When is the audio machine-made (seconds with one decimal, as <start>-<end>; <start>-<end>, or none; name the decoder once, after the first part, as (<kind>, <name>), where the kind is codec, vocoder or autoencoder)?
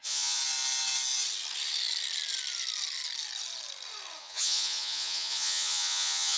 0.0-0.4 (vocoder, Vocos); 4.2-6.4